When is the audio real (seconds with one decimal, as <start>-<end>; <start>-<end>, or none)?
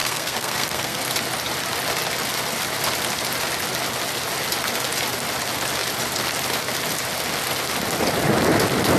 1.0-9.0